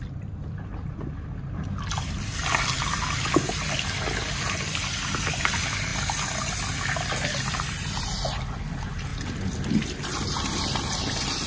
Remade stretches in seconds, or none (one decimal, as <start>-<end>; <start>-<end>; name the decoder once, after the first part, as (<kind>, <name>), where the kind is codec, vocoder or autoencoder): none